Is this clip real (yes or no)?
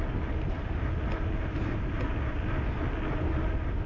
yes